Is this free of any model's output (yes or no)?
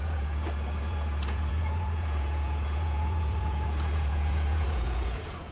no